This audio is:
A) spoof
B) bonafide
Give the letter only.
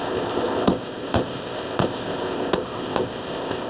A